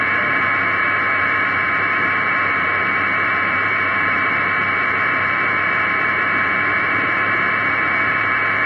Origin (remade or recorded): remade